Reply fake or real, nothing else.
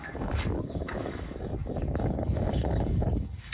fake